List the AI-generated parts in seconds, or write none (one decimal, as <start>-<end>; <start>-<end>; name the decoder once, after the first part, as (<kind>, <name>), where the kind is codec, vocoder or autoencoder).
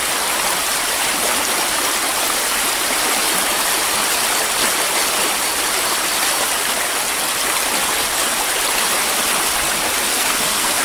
10.1-10.8 (codec, SNAC)